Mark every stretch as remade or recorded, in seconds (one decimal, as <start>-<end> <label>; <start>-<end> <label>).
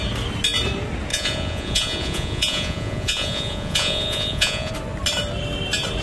0.0-1.1 recorded; 1.1-4.7 remade; 4.7-6.0 recorded